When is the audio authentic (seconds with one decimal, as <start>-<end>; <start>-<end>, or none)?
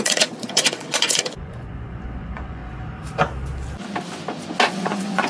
2.6-4.7